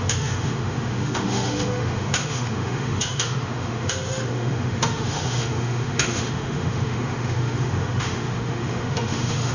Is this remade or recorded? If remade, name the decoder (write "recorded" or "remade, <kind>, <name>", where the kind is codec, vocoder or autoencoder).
remade, autoencoder, DAC-VAE